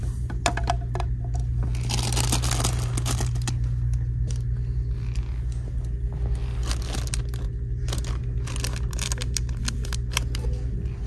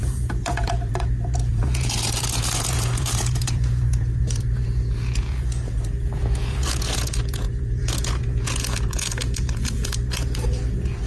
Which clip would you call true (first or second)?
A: first